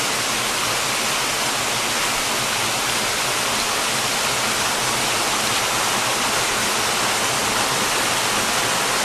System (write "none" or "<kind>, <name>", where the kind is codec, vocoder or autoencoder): none